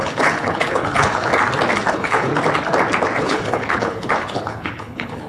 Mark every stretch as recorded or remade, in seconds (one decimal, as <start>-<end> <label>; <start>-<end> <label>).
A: 0.0-1.3 remade; 1.3-1.9 recorded; 1.9-2.3 remade; 2.3-3.2 recorded; 3.2-5.3 remade